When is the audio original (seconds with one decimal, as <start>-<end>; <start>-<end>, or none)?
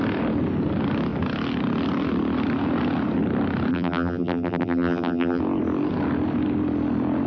0.0-3.7; 5.4-7.3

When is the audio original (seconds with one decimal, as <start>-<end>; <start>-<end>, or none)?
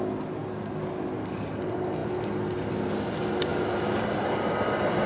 0.0-5.1